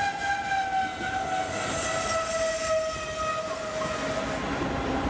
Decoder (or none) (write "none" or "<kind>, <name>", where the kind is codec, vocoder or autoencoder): none